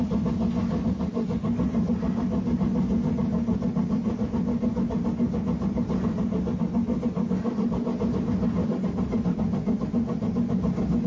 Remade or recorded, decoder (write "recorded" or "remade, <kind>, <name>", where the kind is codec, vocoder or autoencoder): recorded